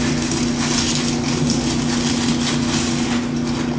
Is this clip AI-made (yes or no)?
no